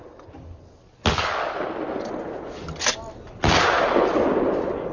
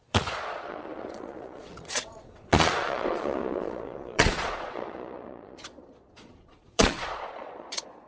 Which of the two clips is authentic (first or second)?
first